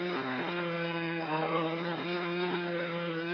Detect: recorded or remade remade